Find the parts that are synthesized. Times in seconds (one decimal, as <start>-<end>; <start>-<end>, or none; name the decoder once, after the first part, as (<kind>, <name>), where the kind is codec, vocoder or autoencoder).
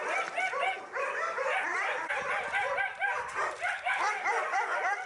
1.7-5.1 (vocoder, BigVGAN v2)